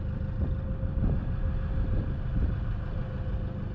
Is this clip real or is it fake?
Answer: real